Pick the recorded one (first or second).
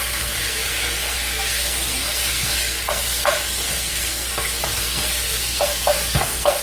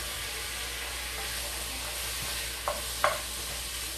second